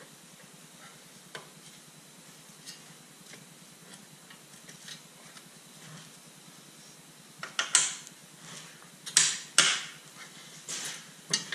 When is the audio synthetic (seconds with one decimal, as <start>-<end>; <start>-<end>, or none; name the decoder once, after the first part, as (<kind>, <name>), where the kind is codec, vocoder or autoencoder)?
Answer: none